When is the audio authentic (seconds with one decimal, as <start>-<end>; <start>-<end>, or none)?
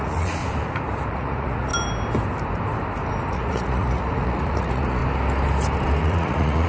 0.4-1.1; 1.7-3.3; 5.0-6.0